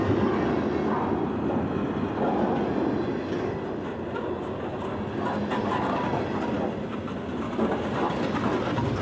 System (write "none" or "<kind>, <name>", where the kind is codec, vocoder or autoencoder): none